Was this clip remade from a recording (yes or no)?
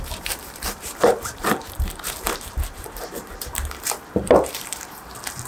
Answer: yes